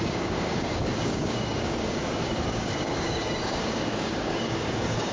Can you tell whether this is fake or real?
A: fake